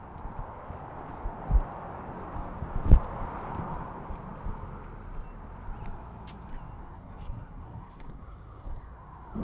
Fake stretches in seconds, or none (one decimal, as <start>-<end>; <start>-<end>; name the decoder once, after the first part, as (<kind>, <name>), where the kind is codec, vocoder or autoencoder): 6.8-9.4 (codec, SNAC)

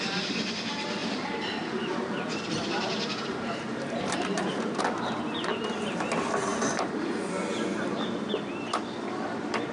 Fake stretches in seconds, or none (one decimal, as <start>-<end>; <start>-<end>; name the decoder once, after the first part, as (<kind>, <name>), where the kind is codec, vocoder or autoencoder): 1.0-4.8 (vocoder, BigVGAN v2); 6.5-7.1

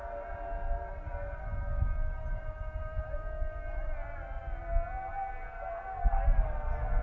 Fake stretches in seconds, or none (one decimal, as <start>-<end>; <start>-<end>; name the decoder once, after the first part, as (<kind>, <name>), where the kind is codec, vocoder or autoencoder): none

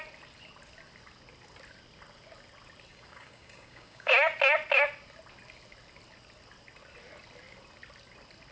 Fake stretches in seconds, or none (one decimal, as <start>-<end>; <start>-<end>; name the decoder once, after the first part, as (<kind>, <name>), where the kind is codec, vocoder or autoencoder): 2.9-4.1 (codec, DAC)